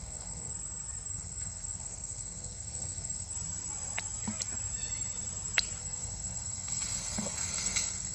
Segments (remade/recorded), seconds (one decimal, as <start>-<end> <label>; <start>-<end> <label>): 0.0-0.5 remade; 0.5-1.1 recorded; 1.1-3.3 remade; 3.3-5.8 recorded; 5.8-8.1 remade

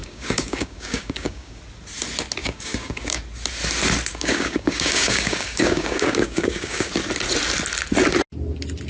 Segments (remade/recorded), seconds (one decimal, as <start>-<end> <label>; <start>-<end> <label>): 0.0-1.6 remade; 1.6-2.4 recorded; 2.4-3.2 remade; 3.2-4.1 recorded; 4.1-6.9 remade; 6.9-8.9 recorded

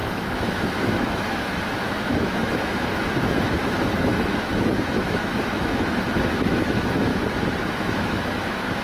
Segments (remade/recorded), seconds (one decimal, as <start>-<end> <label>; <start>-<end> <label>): 0.0-7.1 remade; 7.1-7.7 recorded; 7.7-8.8 remade

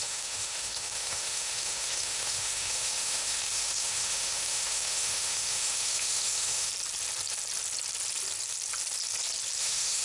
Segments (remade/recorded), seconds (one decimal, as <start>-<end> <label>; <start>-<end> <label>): 0.0-6.7 remade; 6.7-9.6 recorded; 9.6-10.0 remade

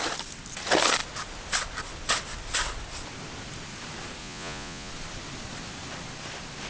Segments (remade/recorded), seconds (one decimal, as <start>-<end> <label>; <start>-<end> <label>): 0.0-4.2 recorded; 4.2-4.9 remade; 4.9-6.7 recorded

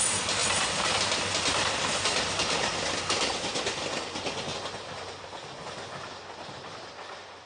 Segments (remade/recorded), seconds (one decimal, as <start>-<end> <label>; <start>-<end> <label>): 0.0-7.5 recorded

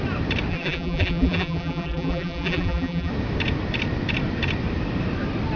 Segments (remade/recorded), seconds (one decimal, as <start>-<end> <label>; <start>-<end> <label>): 0.0-0.5 recorded; 0.5-3.1 remade; 3.1-5.6 recorded

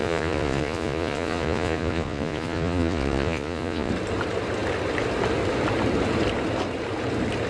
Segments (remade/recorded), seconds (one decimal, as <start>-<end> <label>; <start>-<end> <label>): 0.0-3.9 remade; 3.9-7.5 recorded